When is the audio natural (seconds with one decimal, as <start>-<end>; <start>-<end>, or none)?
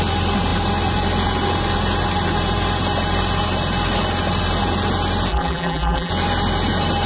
0.0-5.3; 6.1-7.1